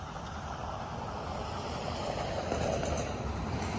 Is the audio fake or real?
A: real